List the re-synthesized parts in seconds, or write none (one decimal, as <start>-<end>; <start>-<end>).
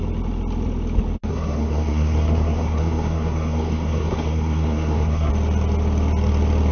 1.3-5.3